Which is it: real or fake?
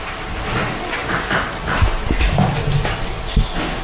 real